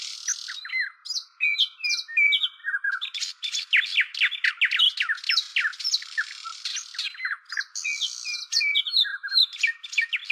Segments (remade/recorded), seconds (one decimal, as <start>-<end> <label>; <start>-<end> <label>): 0.0-10.3 recorded